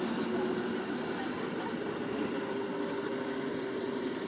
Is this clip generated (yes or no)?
yes